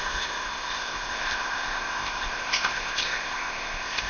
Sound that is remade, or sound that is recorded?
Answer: remade